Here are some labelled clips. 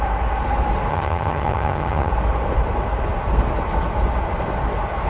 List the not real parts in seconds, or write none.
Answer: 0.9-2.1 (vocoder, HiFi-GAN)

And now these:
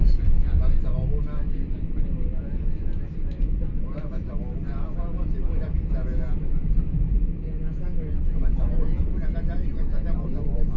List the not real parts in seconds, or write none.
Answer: none

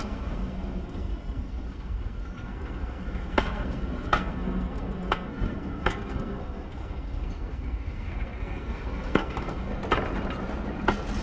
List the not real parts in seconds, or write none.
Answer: 0.0-9.7 (codec, SNAC)

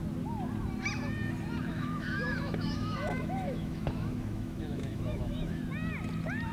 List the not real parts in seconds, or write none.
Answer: 1.7-5.6 (autoencoder, DAC-VAE)

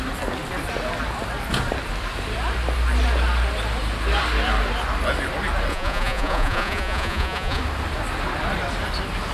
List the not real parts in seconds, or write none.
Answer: 5.7-7.6 (vocoder, Vocos)

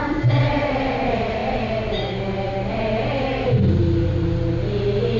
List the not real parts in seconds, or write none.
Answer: none

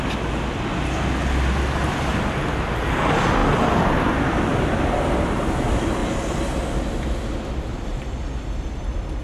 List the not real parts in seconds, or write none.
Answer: 2.1-3.0 (vocoder, BigVGAN v2); 3.4-4.6

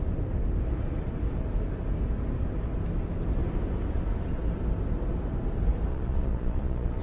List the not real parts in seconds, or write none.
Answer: 5.9-7.0 (vocoder, Vocos)